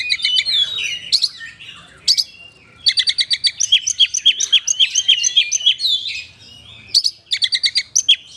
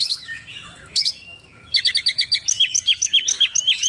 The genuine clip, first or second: first